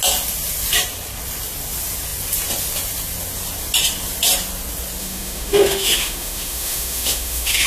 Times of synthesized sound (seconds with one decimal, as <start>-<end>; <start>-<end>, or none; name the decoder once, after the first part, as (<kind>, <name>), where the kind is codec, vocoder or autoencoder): 5.0-7.7 (autoencoder, DAC-VAE)